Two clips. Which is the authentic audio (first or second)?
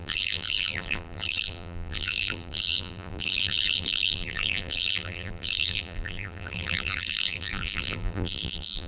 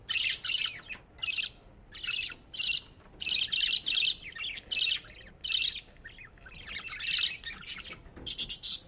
second